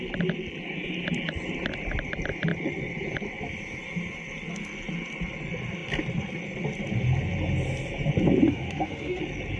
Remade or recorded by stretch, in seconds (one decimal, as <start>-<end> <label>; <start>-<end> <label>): 0.0-8.5 recorded; 8.5-9.2 remade; 9.2-9.6 recorded